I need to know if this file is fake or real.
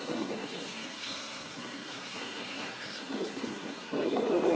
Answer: fake